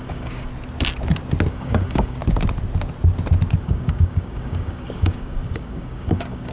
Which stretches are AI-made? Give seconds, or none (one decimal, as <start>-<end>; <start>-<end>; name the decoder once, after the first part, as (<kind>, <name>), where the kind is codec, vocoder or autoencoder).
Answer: 0.0-0.5 (codec, DAC); 1.5-2.2; 3.6-6.5